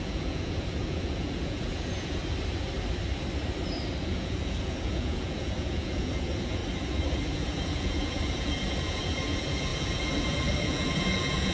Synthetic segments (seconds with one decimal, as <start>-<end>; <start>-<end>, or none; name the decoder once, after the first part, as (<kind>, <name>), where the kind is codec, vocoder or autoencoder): 0.0-2.2 (vocoder, Vocos); 4.1-6.6; 7.2-11.5